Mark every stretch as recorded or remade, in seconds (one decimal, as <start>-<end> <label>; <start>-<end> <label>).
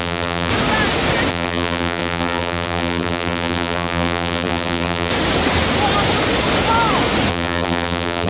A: 0.0-0.5 remade; 0.5-1.3 recorded; 1.3-5.1 remade; 5.1-7.3 recorded; 7.3-8.3 remade